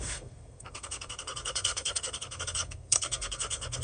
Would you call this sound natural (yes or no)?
no